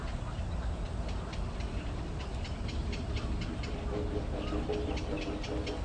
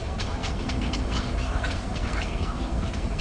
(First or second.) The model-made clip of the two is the second